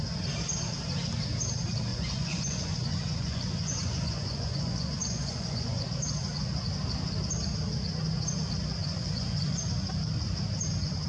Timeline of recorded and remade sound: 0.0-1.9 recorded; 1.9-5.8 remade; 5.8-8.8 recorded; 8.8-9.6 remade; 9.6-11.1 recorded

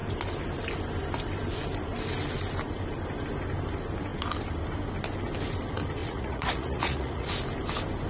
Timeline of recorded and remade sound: 0.0-6.0 recorded; 6.0-7.3 remade; 7.3-8.1 recorded

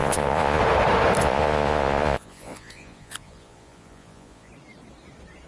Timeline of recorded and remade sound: 0.0-0.6 remade; 0.6-1.2 recorded; 1.2-4.5 remade; 4.5-5.5 recorded

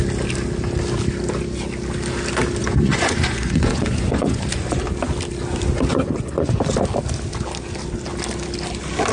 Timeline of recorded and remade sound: 0.0-2.6 recorded; 2.6-4.8 remade; 4.8-5.9 recorded; 5.9-6.6 remade; 6.6-9.1 recorded

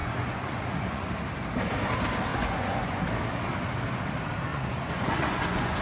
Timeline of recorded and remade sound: 0.0-1.1 remade; 1.1-2.3 recorded; 2.3-3.0 remade; 3.0-4.5 recorded; 4.5-5.8 remade